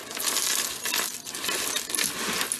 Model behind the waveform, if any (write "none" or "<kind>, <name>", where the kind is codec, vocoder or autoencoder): none